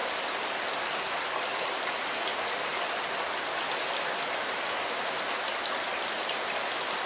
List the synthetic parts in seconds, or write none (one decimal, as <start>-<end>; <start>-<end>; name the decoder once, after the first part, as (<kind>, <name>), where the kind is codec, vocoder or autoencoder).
none